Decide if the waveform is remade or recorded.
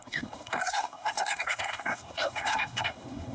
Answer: remade